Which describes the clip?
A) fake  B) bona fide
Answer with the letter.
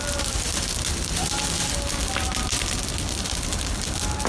B